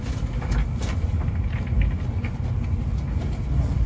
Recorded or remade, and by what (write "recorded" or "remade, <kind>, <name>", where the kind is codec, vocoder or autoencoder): recorded